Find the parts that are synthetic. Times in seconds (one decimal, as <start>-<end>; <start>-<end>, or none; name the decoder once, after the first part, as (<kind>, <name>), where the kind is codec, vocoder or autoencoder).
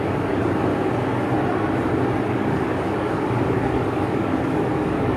0.0-0.7 (codec, DAC); 2.3-5.2